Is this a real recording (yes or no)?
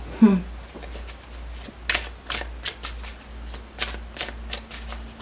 yes